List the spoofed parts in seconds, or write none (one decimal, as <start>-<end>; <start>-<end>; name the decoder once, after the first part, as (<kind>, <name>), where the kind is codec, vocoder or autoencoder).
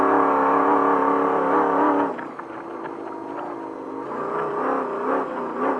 none